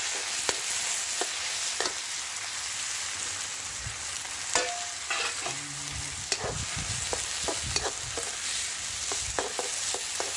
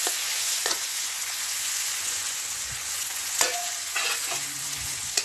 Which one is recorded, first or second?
first